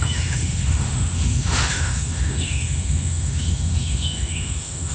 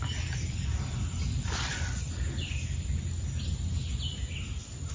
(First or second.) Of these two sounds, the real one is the second